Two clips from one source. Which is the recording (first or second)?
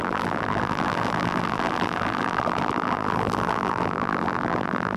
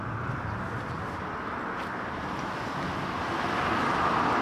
second